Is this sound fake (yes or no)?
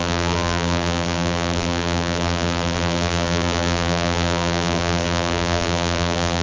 yes